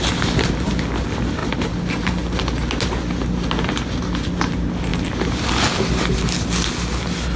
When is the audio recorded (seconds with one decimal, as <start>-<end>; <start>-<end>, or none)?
0.0-7.4